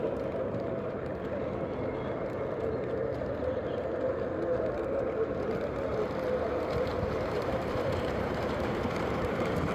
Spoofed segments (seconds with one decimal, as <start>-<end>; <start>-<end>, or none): 6.9-9.7